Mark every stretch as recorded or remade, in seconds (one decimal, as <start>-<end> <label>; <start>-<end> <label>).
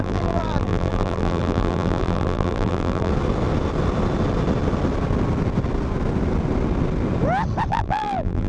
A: 0.0-3.1 remade; 3.1-7.7 recorded; 7.7-8.5 remade